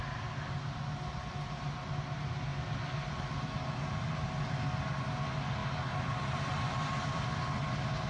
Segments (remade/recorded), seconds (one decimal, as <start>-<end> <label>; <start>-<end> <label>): 0.0-2.5 recorded; 2.5-5.0 remade; 5.0-5.6 recorded; 5.6-7.4 remade; 7.4-8.1 recorded